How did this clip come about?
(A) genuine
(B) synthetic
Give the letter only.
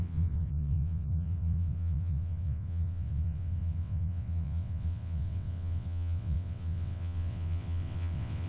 B